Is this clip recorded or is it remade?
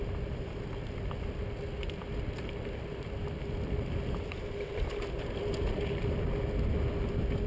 recorded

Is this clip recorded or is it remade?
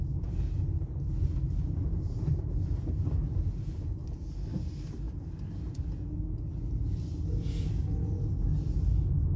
recorded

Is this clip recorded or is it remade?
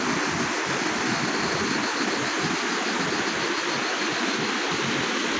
recorded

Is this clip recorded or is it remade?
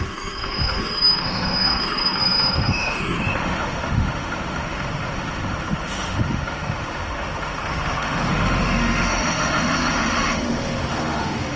remade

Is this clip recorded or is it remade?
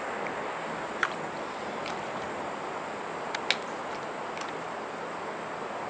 recorded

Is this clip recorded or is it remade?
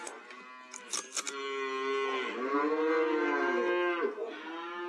recorded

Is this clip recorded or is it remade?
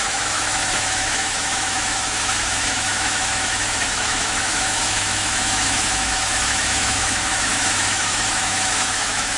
remade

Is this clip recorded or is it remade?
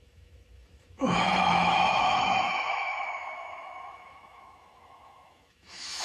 remade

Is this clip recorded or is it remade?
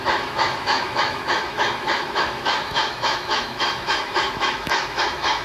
remade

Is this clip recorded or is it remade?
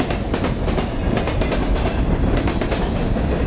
recorded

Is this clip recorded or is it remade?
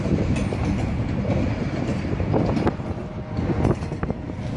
recorded